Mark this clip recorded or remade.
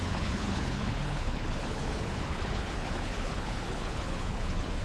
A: remade